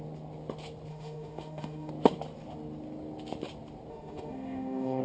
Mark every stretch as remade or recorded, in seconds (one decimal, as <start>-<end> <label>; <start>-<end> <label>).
0.0-0.9 recorded; 0.9-1.9 remade; 1.9-3.9 recorded; 3.9-5.0 remade